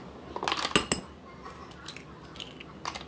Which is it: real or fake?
real